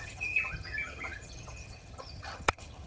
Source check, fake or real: fake